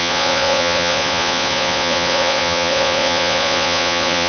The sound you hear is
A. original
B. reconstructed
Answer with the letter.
B